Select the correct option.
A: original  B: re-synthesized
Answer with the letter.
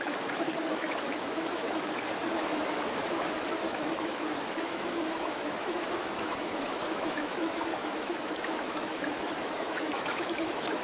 B